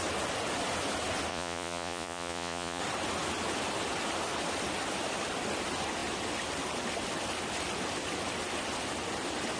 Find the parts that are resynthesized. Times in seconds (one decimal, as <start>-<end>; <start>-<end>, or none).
1.3-2.8